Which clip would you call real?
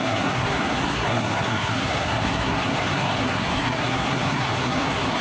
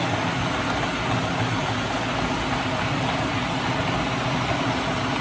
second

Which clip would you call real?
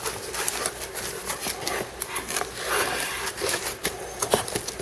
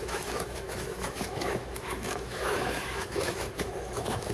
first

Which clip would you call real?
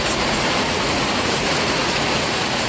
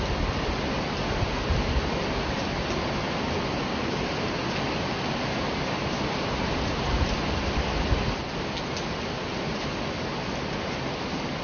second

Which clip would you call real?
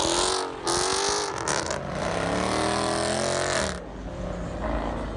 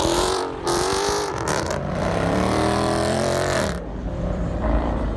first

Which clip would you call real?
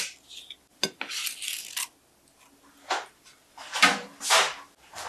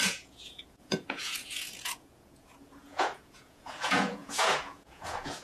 first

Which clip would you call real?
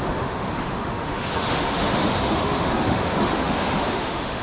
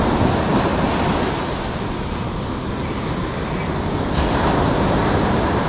second